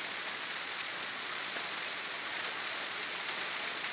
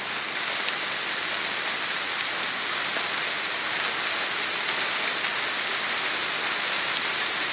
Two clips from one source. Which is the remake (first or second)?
first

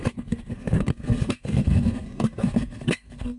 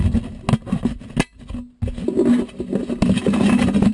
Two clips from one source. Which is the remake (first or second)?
first